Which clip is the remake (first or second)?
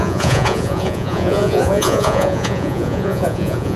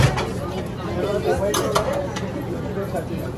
first